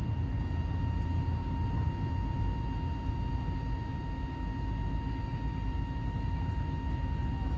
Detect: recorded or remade recorded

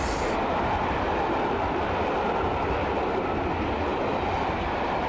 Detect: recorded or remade recorded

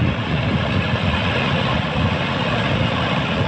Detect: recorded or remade remade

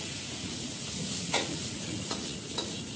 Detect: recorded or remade remade